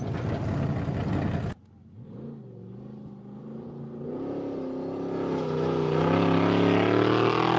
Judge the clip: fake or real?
real